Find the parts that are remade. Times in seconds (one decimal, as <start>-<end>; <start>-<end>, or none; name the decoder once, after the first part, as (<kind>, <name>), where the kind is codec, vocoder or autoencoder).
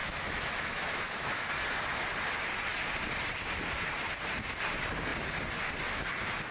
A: 0.0-1.5 (autoencoder, DAC-VAE)